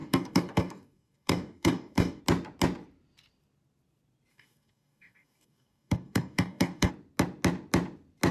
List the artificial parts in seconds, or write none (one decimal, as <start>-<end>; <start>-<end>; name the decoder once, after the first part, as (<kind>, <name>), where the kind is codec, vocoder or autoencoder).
0.0-2.2 (codec, DAC); 4.3-6.9